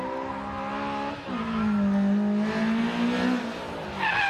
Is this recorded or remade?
recorded